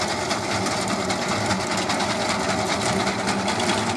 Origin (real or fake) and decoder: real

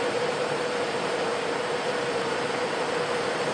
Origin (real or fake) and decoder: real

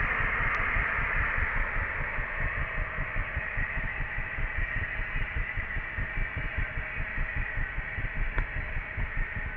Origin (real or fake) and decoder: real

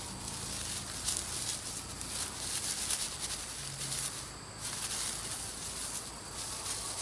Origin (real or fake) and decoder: real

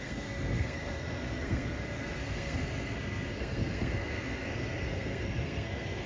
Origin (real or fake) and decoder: fake, codec, SNAC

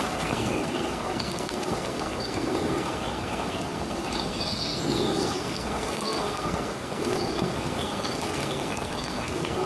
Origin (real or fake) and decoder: fake, codec, SNAC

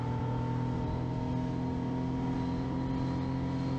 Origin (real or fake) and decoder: real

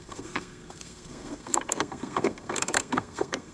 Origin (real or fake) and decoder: fake, codec, SNAC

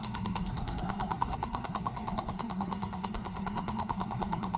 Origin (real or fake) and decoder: fake, codec, SNAC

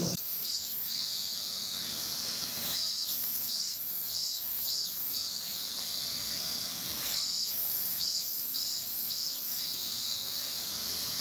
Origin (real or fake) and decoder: fake, codec, SNAC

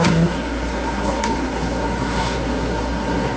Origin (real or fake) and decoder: fake, codec, SNAC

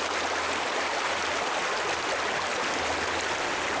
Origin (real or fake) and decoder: real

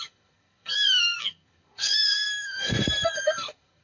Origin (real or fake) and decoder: fake, codec, SNAC